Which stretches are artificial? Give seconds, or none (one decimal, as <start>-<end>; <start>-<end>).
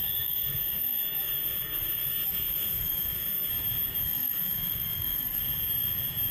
0.0-3.5; 4.0-5.4